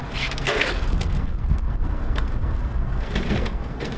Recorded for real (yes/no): no